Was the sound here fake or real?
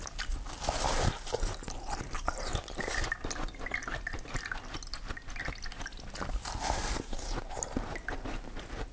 real